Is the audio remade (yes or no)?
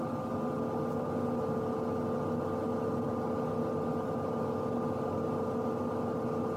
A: no